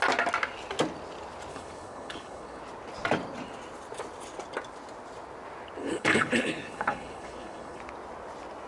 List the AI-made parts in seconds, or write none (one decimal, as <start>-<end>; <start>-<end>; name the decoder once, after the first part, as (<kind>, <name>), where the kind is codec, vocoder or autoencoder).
1.5-2.6 (codec, HILCodec); 5.8-7.8